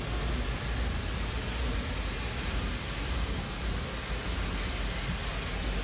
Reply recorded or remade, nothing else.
recorded